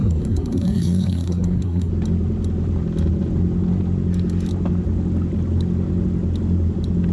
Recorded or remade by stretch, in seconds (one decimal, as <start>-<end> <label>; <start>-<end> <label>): 0.0-1.9 remade; 1.9-7.1 recorded